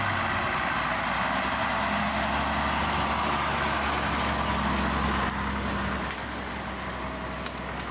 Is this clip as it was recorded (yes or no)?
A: yes